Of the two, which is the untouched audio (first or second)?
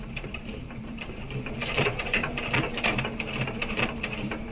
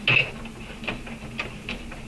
second